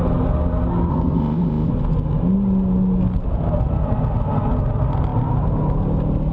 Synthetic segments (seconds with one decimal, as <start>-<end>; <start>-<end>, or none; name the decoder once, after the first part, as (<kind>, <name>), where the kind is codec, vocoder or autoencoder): 0.9-1.7 (codec, ZipCodec)